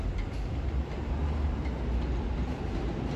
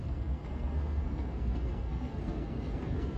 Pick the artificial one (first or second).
second